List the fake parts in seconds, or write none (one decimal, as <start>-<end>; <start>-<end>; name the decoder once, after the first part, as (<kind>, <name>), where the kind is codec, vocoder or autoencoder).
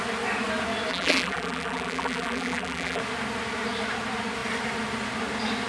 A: 0.9-3.0 (vocoder, BigVGAN v2)